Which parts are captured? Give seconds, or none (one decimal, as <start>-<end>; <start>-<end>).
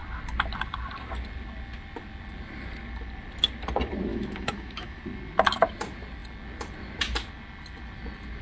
0.0-4.1; 5.0-8.4